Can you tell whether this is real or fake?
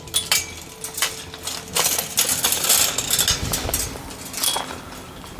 real